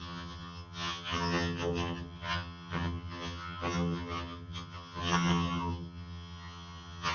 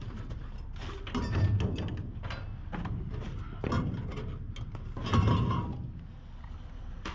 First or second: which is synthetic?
first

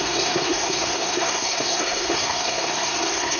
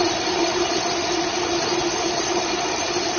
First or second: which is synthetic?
first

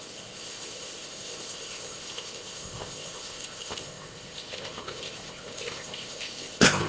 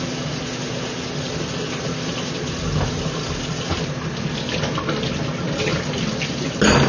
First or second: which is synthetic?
first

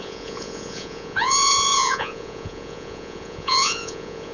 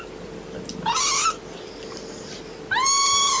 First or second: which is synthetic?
first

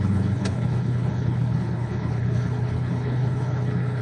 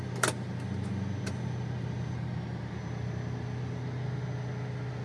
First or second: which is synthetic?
first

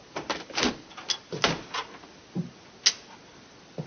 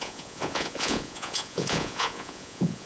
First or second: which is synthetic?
second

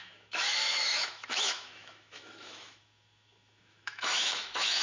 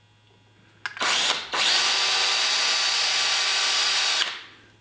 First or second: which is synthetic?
first